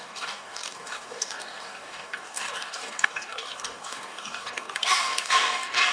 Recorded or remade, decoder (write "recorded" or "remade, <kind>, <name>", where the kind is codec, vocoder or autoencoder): remade, codec, DAC